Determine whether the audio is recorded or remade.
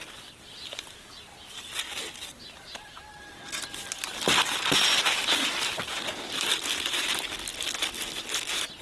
recorded